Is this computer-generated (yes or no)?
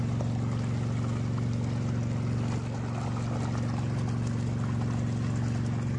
no